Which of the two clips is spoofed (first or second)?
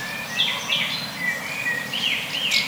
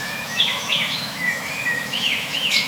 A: second